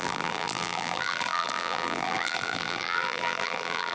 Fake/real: fake